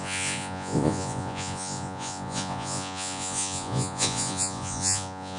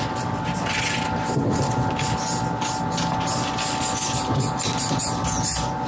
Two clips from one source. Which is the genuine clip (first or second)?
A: second